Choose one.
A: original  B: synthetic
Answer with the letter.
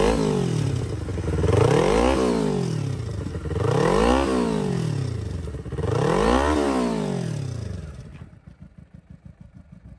A